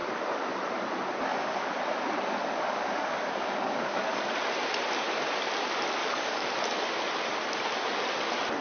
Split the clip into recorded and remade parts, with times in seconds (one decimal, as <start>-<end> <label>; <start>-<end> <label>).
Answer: 0.0-1.3 recorded; 1.3-1.8 remade; 1.8-2.4 recorded; 2.4-4.2 remade; 4.2-6.0 recorded; 6.0-6.5 remade; 6.5-8.6 recorded